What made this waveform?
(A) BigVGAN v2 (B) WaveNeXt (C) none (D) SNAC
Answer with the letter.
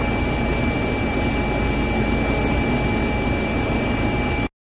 C